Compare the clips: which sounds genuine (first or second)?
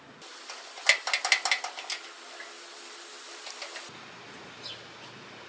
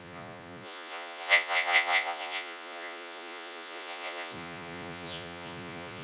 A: first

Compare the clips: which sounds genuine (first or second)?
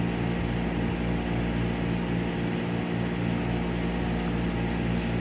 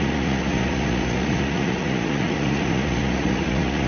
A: first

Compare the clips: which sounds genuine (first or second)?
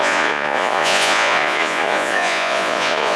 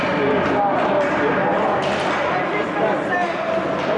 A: second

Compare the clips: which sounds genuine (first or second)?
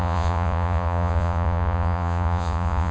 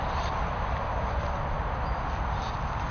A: second